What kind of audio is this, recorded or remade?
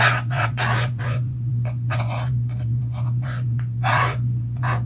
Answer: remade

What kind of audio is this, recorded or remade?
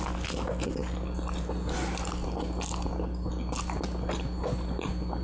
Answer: recorded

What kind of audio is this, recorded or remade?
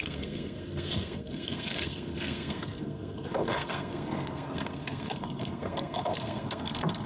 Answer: remade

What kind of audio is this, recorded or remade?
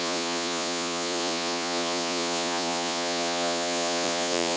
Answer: remade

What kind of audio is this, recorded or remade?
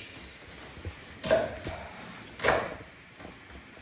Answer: recorded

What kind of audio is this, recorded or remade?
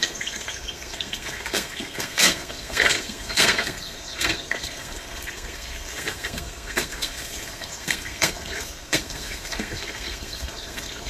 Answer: remade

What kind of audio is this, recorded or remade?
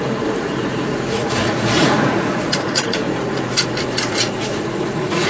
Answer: remade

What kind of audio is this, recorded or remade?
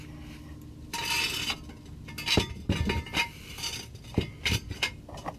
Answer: recorded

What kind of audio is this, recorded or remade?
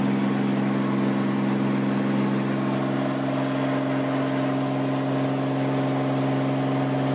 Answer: recorded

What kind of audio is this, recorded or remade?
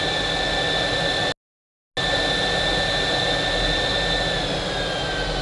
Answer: recorded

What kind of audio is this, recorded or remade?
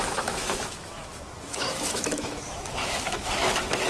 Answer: remade